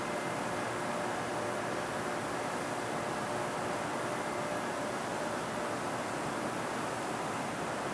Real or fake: real